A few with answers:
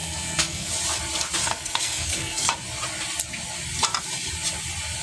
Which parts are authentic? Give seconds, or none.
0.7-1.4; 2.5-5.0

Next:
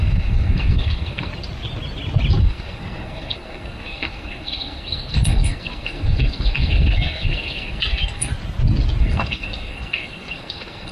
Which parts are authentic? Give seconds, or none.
1.3-2.4; 8.3-9.0

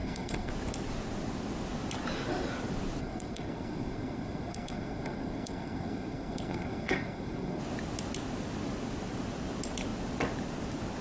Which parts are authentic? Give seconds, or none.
0.5-3.0; 7.6-11.0

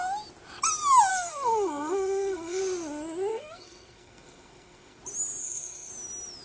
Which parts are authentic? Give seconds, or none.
0.0-1.1; 2.6-3.3; 5.0-5.4; 5.9-6.4

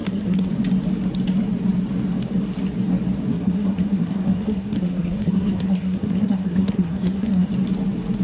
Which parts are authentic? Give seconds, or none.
0.5-3.3; 7.5-8.2

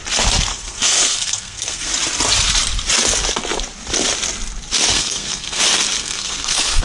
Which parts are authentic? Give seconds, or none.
0.0-0.5; 1.9-4.9; 5.6-6.0